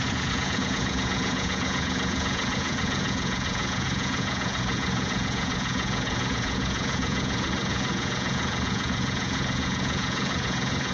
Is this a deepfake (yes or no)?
yes